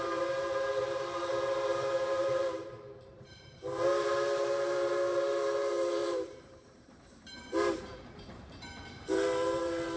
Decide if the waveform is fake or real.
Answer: fake